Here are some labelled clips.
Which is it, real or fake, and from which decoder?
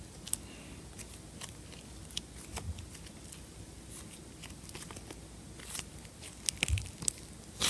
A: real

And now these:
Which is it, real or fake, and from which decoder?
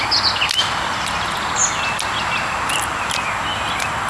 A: real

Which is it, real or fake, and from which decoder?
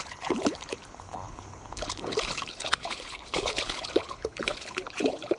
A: fake, codec, HILCodec